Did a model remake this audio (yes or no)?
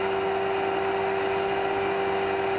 no